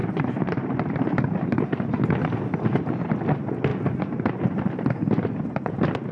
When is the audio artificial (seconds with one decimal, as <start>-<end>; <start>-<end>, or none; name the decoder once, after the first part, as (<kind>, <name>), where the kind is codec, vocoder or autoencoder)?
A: 0.0-2.0 (vocoder, BigVGAN v2); 3.7-5.5